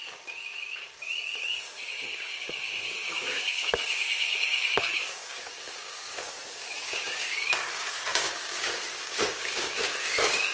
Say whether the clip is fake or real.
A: fake